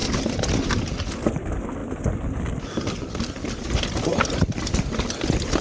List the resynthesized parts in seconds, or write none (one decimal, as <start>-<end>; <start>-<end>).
none